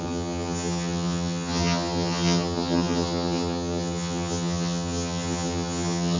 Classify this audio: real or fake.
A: fake